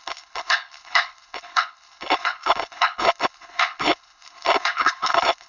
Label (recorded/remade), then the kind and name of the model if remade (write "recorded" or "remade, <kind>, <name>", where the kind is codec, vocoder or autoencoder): remade, codec, HILCodec